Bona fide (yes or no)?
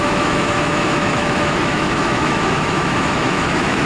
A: no